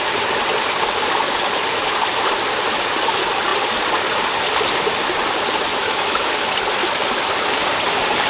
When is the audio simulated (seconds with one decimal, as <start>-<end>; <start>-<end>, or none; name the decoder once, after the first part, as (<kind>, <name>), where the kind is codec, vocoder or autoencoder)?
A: 5.7-6.3 (autoencoder, DAC-VAE)